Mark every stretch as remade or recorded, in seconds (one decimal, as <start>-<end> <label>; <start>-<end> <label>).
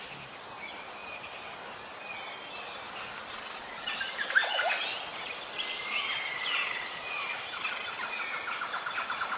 0.0-9.4 recorded